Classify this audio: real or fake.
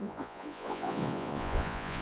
fake